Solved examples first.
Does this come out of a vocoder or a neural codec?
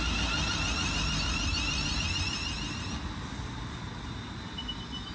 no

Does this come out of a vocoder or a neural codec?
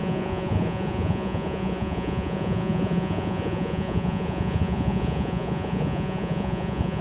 yes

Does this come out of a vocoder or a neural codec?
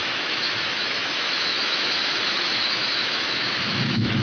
yes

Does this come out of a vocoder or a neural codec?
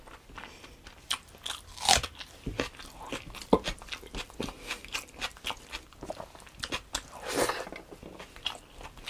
no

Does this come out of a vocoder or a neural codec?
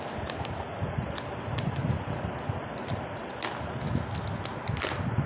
no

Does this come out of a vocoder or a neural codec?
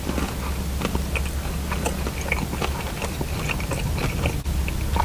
no